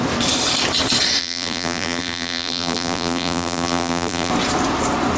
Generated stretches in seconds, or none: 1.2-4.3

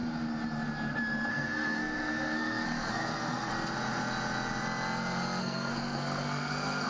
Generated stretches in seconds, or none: 1.3-3.5; 5.4-6.9

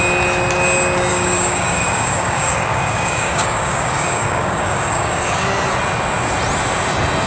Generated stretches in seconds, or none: 1.1-5.5

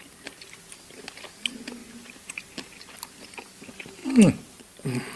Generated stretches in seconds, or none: none

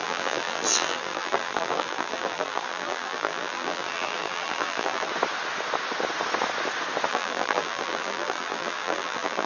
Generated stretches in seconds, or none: 0.0-5.1; 7.1-9.5

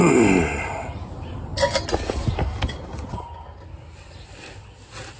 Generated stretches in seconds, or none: none

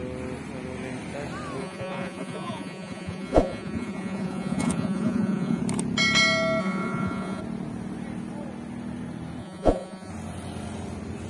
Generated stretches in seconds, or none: 1.6-5.6; 6.6-7.4; 9.4-10.1